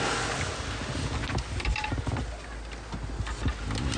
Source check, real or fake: real